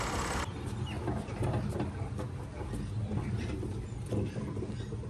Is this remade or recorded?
recorded